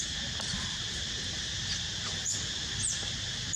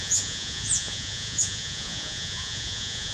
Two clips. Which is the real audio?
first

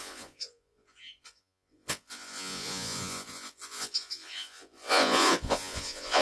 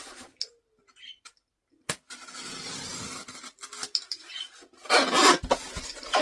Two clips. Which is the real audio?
second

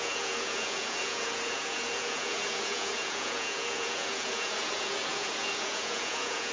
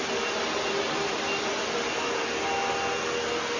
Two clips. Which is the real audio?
second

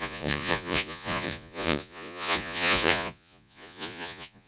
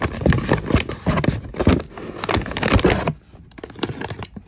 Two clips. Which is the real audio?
second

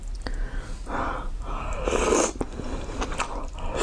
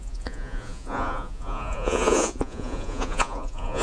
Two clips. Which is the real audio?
first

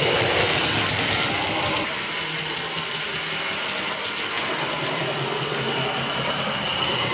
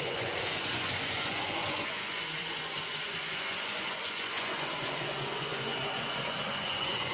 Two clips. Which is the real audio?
first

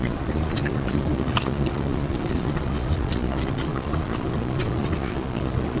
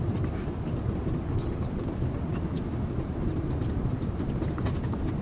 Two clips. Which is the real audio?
second